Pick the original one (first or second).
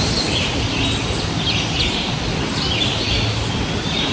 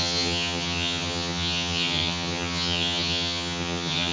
first